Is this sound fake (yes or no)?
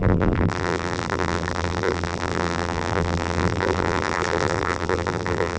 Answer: yes